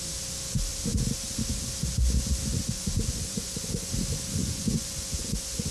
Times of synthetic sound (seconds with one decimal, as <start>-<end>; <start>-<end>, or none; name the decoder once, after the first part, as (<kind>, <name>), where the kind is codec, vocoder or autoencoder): 2.5-3.9 (vocoder, Vocos); 4.4-5.7